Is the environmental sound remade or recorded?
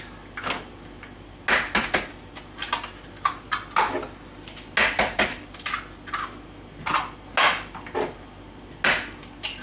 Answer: recorded